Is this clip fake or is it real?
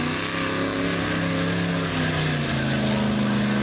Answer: real